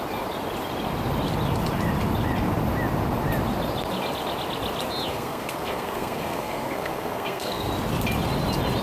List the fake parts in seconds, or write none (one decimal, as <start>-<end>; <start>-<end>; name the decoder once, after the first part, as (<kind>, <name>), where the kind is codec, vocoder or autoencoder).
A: 5.1-7.7 (codec, SNAC)